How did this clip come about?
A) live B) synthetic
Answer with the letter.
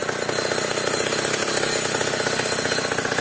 A